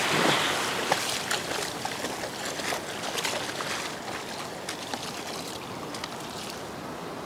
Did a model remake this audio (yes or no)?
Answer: no